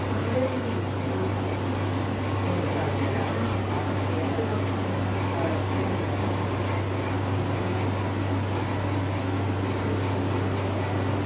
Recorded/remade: recorded